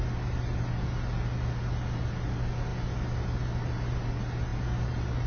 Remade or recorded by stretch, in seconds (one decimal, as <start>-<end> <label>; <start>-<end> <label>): 0.0-5.3 recorded